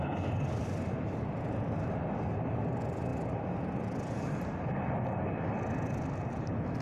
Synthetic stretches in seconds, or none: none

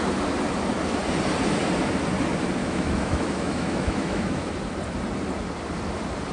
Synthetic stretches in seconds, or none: 2.6-4.5

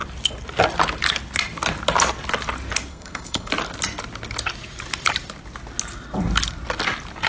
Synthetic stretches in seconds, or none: 2.9-3.5